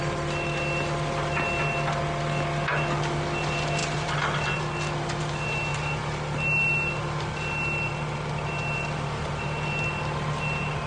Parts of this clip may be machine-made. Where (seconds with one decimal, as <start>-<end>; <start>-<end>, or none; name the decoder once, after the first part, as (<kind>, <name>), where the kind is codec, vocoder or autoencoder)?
3.8-4.6 (vocoder, BigVGAN v2)